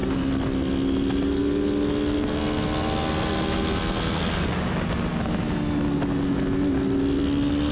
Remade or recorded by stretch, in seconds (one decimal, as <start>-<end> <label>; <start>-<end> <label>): 0.0-7.7 recorded